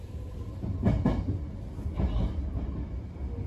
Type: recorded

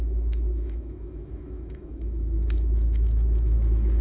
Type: remade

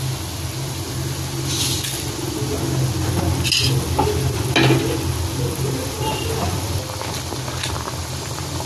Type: recorded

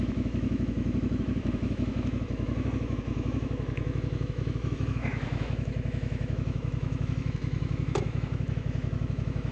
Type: remade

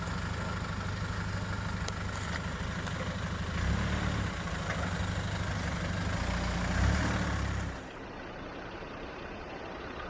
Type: recorded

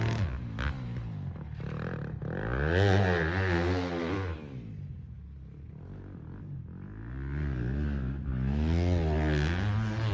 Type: recorded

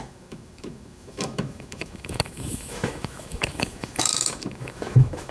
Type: remade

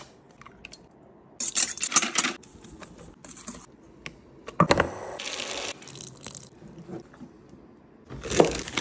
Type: recorded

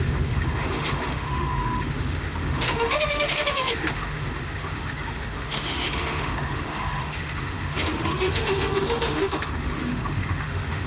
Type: remade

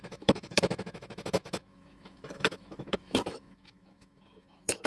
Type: remade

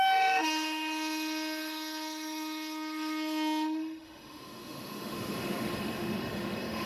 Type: remade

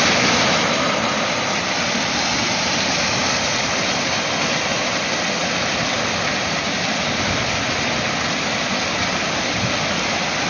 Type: recorded